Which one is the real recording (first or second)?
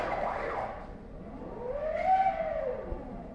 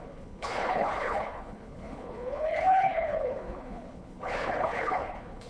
first